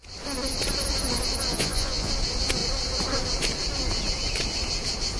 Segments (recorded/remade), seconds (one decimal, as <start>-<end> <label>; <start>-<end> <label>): 0.0-1.5 recorded; 1.5-2.1 remade; 2.1-5.2 recorded